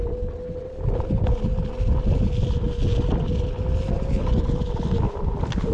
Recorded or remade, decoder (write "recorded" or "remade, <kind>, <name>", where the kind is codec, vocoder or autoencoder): recorded